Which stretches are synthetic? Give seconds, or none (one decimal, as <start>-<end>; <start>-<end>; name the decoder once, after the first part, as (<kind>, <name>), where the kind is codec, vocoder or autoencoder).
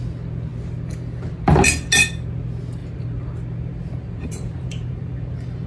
2.8-3.3 (vocoder, BigVGAN v2); 3.7-5.7